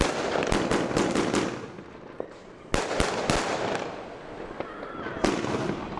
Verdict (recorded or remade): recorded